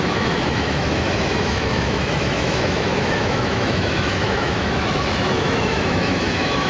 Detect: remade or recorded remade